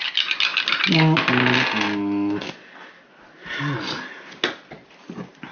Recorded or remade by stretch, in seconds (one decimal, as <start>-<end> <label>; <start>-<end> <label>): 0.0-5.5 recorded